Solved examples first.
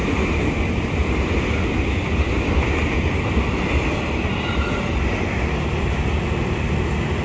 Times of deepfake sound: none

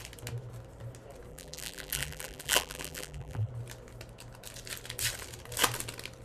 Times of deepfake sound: 1.3-3.5

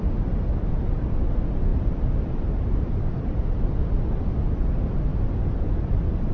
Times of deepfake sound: 1.7-3.6; 5.1-6.3

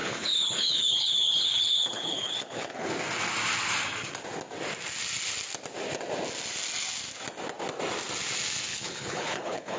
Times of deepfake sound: 0.0-2.9; 8.7-9.8